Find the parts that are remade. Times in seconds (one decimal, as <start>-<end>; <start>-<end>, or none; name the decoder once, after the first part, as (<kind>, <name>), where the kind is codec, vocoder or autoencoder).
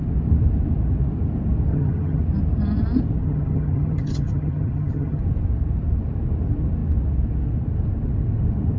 1.7-2.2 (vocoder, HiFi-GAN); 3.2-5.2